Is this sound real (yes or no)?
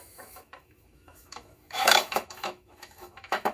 no